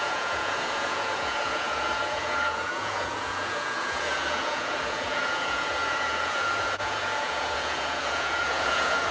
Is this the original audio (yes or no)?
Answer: no